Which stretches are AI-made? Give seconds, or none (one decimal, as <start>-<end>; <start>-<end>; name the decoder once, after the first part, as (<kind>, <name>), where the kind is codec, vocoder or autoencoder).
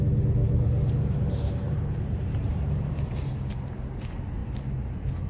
0.4-3.6 (vocoder, BigVGAN v2)